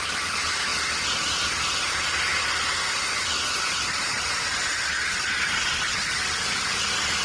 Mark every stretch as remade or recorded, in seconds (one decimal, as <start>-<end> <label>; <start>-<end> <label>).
0.0-7.2 recorded